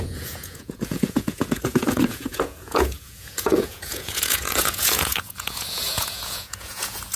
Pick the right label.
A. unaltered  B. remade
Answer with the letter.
B